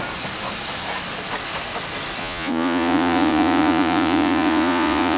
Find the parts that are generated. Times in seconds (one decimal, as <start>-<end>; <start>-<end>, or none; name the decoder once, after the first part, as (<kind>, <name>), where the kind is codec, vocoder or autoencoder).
2.2-5.2 (vocoder, Vocos)